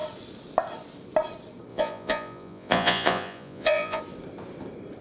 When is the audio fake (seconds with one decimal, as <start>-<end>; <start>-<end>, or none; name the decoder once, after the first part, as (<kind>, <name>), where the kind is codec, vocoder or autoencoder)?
1.7-4.0 (vocoder, Vocos)